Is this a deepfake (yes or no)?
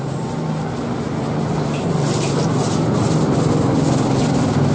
no